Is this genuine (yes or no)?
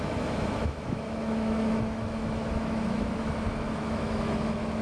no